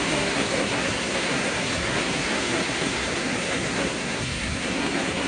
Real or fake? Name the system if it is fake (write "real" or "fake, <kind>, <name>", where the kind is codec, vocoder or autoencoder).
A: fake, codec, SNAC